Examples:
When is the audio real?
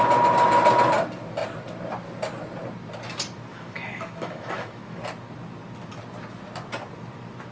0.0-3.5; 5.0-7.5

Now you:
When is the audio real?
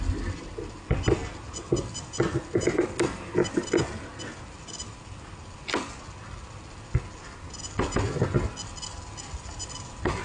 0.0-10.2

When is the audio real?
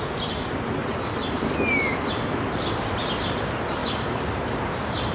0.0-3.8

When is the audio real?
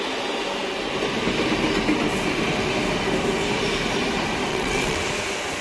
0.0-4.5; 5.0-5.6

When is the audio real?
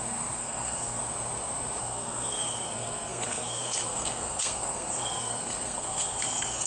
1.0-1.8